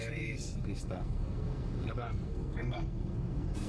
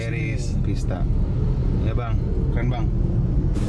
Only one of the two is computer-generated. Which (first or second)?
first